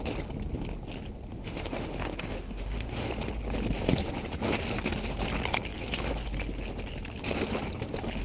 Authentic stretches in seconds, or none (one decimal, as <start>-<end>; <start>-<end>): 0.0-1.4; 3.1-8.2